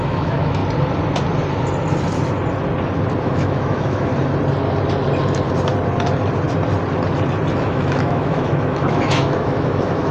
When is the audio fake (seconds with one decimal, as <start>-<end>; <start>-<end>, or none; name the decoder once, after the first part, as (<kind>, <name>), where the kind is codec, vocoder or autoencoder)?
0.0-0.6 (autoencoder, DAC-VAE); 3.2-4.1; 7.5-10.1